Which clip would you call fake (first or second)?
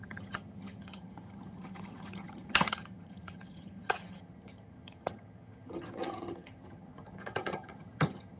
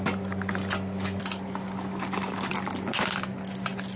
first